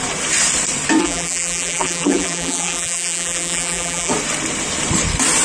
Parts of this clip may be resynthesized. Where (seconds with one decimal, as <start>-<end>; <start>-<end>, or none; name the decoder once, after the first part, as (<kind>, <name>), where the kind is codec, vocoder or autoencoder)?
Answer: 1.0-4.1 (vocoder, BigVGAN v2)